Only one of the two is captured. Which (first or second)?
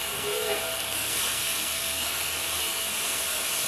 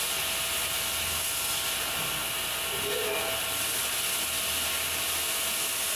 second